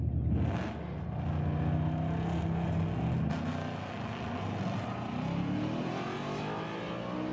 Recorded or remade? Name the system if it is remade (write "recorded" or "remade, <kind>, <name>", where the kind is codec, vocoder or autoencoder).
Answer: recorded